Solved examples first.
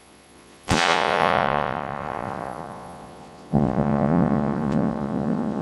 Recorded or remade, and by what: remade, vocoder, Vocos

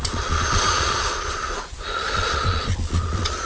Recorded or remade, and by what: remade, vocoder, Vocos